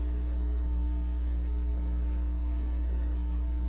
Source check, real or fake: fake